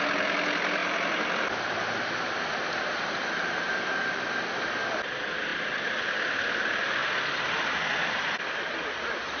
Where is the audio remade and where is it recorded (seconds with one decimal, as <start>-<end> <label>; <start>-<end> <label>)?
0.0-0.8 recorded; 0.8-4.3 remade; 4.3-7.0 recorded; 7.0-7.8 remade; 7.8-9.4 recorded